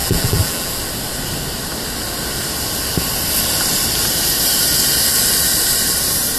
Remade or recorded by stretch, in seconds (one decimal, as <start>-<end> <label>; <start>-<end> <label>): 0.0-0.7 remade; 0.7-6.4 recorded